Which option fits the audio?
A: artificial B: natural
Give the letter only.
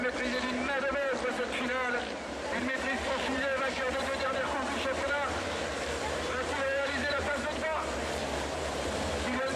A